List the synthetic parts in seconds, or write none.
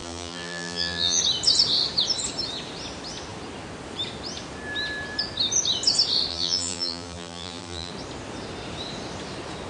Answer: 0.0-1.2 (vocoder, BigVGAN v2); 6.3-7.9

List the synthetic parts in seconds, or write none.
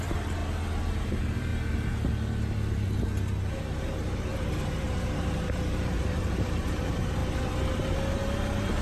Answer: 0.0-0.4 (vocoder, BigVGAN v2); 1.1-1.5; 3.6-7.2; 8.1-8.8